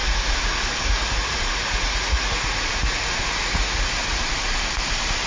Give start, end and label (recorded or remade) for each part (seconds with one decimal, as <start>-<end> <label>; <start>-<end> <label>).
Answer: 0.0-4.0 remade; 4.0-5.3 recorded